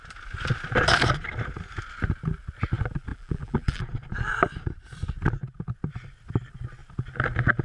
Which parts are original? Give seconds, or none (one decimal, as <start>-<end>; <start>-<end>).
0.0-3.1; 3.8-7.6